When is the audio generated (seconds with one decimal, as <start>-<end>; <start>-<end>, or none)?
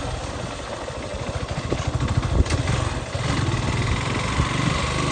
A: none